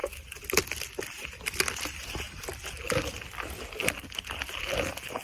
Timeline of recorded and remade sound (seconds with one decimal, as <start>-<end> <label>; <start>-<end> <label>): 0.0-5.2 recorded